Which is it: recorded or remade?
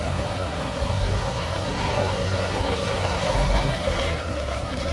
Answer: remade